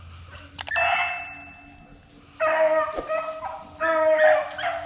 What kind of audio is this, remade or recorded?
recorded